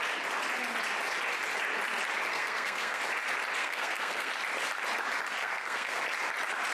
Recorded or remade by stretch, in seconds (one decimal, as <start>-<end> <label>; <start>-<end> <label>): 0.0-2.3 recorded; 2.3-3.0 remade; 3.0-3.6 recorded; 3.6-4.3 remade; 4.3-5.4 recorded; 5.4-6.0 remade; 6.0-6.7 recorded